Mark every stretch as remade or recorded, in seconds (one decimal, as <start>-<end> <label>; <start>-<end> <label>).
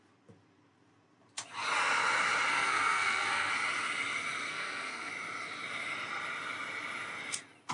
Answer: 0.0-2.5 recorded; 2.5-3.5 remade; 3.5-4.5 recorded; 4.5-5.1 remade; 5.1-7.7 recorded